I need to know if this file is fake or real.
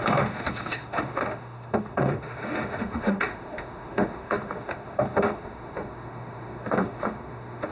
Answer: fake